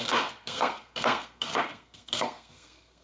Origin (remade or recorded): remade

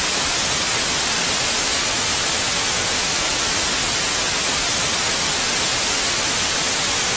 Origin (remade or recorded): recorded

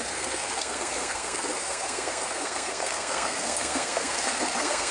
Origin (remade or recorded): remade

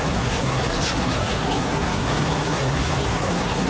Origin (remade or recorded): remade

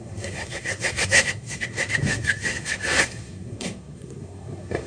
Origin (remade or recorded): remade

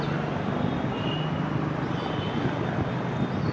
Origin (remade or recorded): recorded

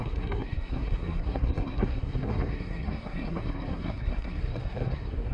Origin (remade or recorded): remade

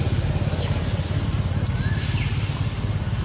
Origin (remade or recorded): recorded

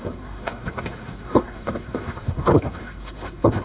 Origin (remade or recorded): remade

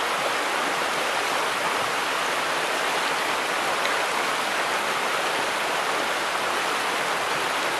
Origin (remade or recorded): recorded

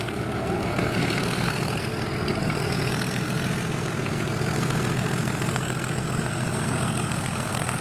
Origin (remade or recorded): remade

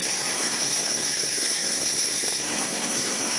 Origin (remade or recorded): remade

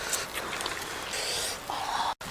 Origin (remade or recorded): recorded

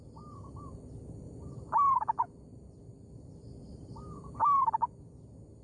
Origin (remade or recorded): recorded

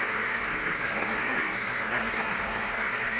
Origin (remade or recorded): remade